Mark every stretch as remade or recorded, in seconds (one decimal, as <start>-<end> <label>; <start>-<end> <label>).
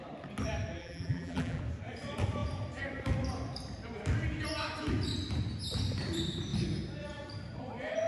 0.0-0.8 recorded; 0.8-1.6 remade; 1.6-8.1 recorded